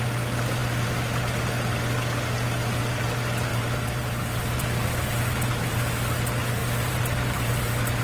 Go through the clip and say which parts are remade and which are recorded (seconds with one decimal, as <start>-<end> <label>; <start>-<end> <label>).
0.0-3.5 recorded; 3.5-5.9 remade; 5.9-6.6 recorded; 6.6-8.0 remade